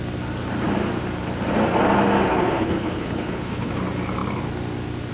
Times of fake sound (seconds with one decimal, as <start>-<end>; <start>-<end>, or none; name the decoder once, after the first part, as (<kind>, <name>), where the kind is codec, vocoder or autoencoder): 2.3-3.7 (codec, HILCodec)